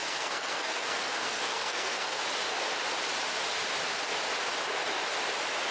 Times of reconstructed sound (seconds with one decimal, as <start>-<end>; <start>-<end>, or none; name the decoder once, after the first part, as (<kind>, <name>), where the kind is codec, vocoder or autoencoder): 0.0-2.2 (codec, SNAC)

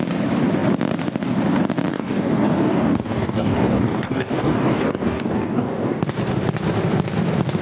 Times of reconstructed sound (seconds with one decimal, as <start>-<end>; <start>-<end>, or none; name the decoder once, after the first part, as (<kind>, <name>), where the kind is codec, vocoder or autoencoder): 1.9-6.0 (codec, DAC)

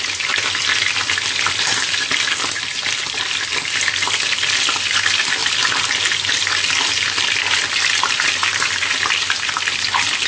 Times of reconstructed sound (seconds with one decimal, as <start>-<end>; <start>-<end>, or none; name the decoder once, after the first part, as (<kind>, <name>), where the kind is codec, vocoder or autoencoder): none

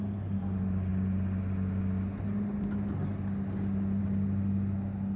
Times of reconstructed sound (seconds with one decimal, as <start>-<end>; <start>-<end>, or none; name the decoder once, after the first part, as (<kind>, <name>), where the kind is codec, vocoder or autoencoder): none

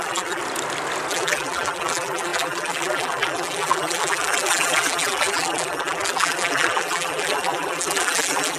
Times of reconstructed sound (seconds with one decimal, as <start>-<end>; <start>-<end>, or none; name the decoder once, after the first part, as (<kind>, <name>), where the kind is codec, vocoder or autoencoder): 0.0-0.4 (vocoder, BigVGAN v2); 1.1-8.6

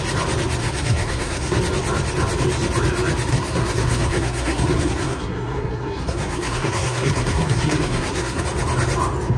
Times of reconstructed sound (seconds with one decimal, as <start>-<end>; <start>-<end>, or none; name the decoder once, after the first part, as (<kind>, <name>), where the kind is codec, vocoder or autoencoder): 0.6-1.6 (codec, SNAC); 3.3-8.4

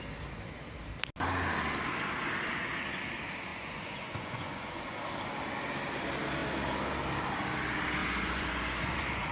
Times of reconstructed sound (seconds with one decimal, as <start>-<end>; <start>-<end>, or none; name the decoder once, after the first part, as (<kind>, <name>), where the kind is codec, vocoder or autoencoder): 3.5-5.0 (vocoder, Vocos); 8.0-9.3

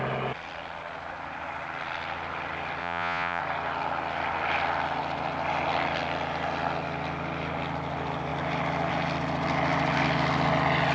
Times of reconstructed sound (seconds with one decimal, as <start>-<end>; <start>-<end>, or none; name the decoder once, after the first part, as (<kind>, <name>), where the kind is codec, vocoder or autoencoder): 2.8-3.4 (vocoder, Vocos)